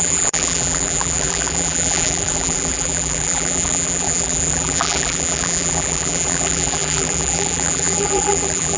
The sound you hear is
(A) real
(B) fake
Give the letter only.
B